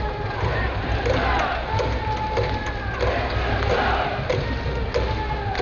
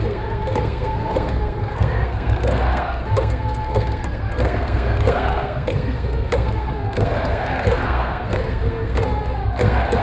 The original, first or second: first